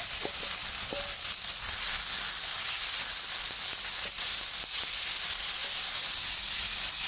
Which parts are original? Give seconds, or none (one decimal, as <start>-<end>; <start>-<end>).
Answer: 0.0-7.1